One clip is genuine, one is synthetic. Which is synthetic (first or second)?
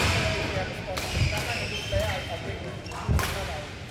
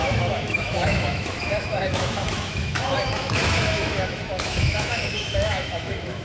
second